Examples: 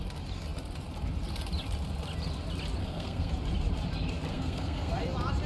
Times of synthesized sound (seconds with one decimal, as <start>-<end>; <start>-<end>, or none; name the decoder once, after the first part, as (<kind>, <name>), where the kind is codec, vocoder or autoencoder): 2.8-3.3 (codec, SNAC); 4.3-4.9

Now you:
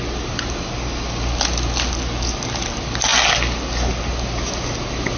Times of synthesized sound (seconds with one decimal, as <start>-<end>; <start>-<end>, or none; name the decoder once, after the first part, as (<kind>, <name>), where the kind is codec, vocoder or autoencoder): none

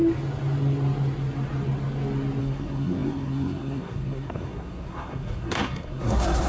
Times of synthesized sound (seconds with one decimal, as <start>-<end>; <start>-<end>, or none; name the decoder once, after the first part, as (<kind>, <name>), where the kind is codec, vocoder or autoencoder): 2.4-6.5 (codec, SNAC)

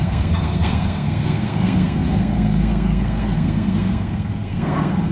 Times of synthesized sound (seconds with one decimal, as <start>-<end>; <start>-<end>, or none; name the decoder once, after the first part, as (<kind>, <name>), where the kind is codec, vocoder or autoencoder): 0.0-5.1 (codec, SNAC)

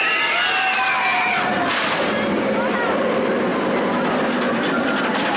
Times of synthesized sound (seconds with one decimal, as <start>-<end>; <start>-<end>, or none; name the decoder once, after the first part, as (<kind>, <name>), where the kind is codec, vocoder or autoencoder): none

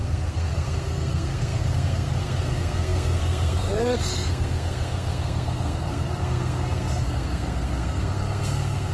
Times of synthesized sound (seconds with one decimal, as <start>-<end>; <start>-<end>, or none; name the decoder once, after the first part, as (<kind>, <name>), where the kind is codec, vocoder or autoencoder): 0.0-8.9 (codec, SNAC)

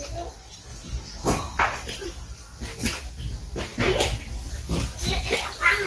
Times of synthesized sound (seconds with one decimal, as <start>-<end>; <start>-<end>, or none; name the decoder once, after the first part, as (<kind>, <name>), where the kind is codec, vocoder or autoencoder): none

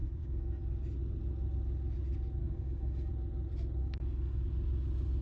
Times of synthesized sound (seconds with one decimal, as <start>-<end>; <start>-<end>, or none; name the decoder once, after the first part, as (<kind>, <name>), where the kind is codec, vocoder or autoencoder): 0.0-0.6 (codec, SNAC); 2.4-3.1; 3.8-4.4